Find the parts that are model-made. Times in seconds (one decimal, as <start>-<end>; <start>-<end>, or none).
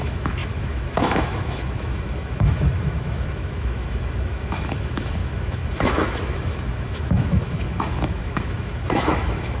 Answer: 0.0-9.6